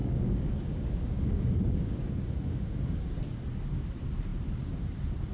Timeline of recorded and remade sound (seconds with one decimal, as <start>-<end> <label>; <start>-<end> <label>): 0.0-3.2 remade; 3.2-5.3 recorded